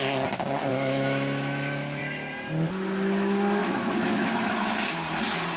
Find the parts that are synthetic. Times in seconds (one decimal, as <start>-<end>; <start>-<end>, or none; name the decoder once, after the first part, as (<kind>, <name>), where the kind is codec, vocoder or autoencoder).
0.7-2.0 (autoencoder, DAC-VAE); 3.6-4.7